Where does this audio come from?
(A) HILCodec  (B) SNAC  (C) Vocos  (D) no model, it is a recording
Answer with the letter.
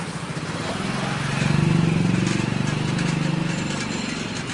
D